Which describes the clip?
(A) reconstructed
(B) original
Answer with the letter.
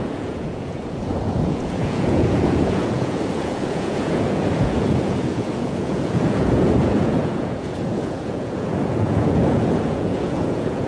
A